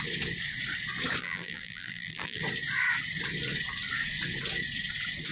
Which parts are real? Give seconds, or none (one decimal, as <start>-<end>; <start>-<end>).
0.0-1.2; 2.4-5.3